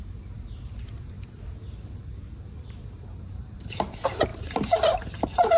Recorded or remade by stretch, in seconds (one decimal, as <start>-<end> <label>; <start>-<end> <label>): 0.0-1.6 remade; 1.6-2.5 recorded; 2.5-5.6 remade